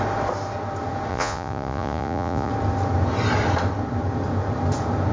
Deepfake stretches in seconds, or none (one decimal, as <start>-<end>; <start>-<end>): 1.1-2.5